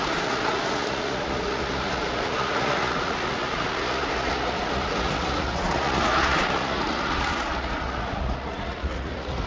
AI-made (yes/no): yes